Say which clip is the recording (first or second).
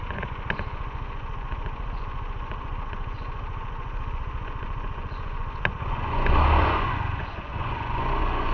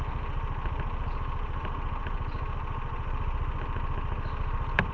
second